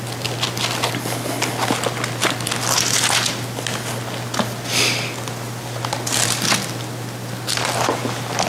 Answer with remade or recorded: recorded